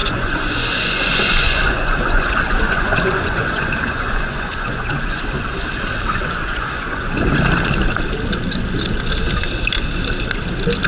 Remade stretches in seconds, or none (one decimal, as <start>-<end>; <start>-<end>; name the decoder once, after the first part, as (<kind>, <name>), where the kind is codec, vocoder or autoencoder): 0.0-5.2 (vocoder, Vocos); 6.1-7.4